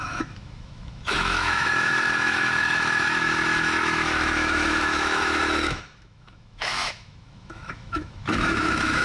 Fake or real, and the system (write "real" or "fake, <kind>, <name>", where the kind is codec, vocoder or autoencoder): fake, autoencoder, DAC-VAE